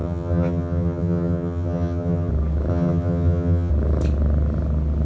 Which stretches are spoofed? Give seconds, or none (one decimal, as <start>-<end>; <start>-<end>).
0.0-2.3; 2.7-3.7